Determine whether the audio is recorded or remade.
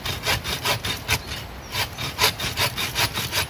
recorded